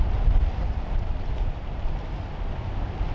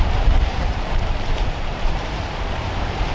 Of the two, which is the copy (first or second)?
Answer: second